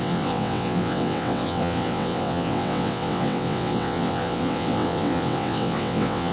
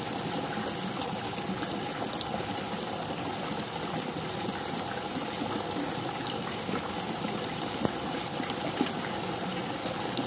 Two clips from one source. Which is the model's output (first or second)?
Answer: first